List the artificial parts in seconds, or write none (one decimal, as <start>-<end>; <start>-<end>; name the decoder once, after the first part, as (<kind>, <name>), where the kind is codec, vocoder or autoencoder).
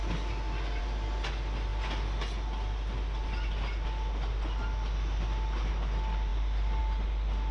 none